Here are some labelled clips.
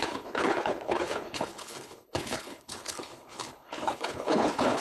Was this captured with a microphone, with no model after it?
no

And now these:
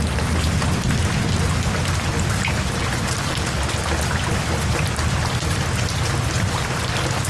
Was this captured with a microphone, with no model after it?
yes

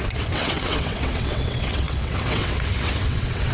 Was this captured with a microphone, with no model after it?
no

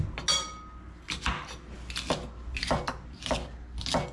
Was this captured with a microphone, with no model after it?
yes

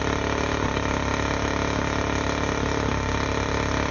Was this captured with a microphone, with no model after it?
no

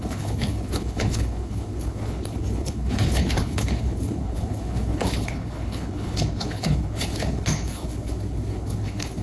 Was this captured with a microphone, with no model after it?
no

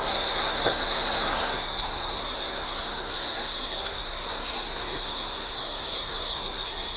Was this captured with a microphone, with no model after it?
no